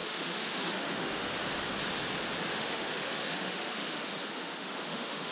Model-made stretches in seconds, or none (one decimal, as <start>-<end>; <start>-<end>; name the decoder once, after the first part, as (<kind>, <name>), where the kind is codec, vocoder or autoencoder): 0.0-1.3 (autoencoder, DAC-VAE); 2.4-5.3

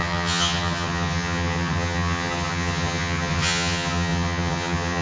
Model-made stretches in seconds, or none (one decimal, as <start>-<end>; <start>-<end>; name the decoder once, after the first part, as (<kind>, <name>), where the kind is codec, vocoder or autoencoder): 0.0-5.0 (vocoder, HiFi-GAN)

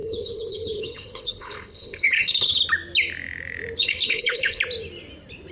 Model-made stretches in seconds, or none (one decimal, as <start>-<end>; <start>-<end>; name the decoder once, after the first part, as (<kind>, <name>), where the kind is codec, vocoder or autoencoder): 0.0-2.6 (codec, HILCodec); 3.8-4.6

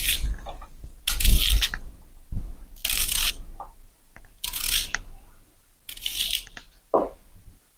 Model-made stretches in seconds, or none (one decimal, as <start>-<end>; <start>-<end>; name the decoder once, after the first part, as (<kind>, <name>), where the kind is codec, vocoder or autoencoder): none

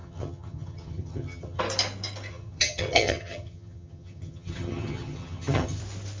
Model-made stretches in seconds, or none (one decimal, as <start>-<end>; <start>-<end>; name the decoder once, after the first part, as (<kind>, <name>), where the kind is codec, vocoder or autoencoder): 0.0-1.6 (vocoder, HiFi-GAN); 2.3-5.8

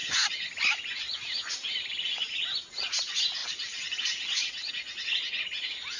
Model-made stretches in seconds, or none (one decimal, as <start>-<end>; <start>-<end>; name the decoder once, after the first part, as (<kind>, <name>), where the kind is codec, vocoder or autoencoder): 3.4-4.7 (vocoder, BigVGAN v2)

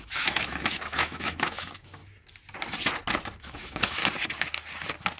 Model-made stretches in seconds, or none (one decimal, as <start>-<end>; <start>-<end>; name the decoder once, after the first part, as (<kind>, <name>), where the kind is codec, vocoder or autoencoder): 0.0-2.0 (autoencoder, DAC-VAE); 3.4-4.0